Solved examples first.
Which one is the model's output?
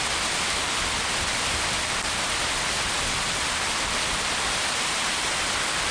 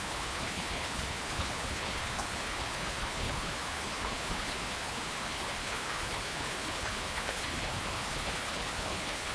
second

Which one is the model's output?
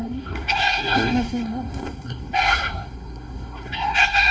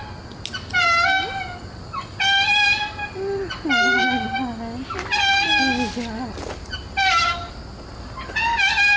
first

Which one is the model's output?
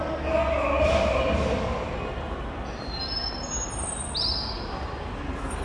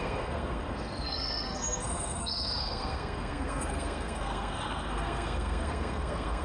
second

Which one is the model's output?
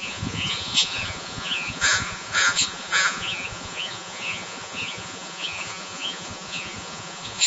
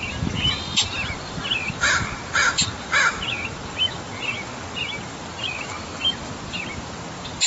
first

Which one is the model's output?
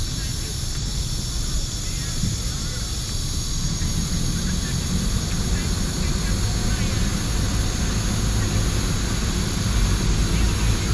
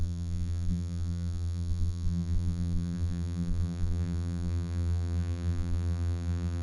second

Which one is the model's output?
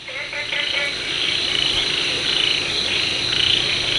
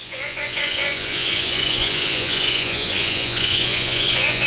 second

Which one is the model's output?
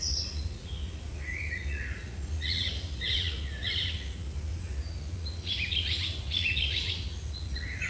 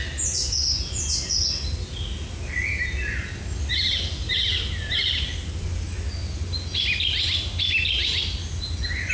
first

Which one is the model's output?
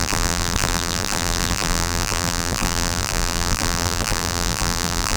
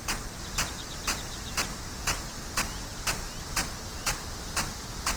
first